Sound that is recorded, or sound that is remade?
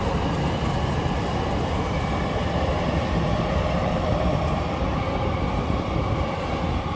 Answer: recorded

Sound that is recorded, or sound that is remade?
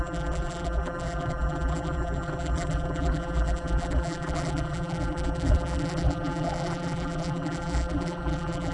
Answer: remade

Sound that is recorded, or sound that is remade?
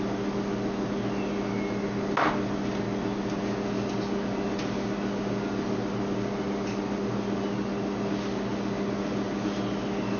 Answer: recorded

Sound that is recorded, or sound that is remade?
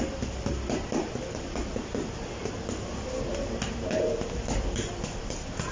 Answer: recorded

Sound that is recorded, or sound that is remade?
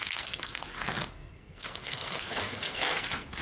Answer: remade